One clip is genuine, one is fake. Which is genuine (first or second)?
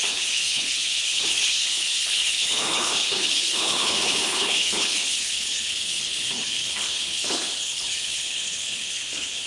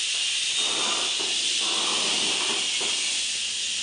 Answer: second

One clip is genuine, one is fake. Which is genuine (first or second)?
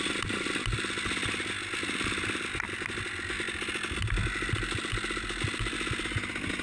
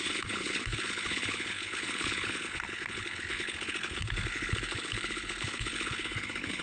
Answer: first